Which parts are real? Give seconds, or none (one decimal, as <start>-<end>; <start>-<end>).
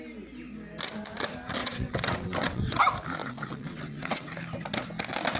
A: 0.0-1.6; 2.8-3.2; 4.3-5.4